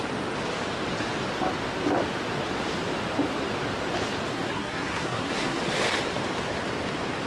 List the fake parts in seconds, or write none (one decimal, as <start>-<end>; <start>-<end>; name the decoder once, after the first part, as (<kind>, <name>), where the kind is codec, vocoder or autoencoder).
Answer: 4.3-5.6 (codec, SNAC)